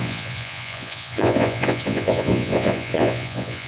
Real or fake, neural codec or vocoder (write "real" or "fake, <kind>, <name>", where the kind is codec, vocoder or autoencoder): fake, vocoder, Vocos